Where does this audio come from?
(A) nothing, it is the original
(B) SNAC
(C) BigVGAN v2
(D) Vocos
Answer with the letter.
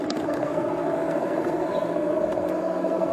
B